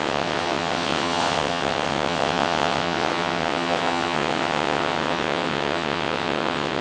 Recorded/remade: remade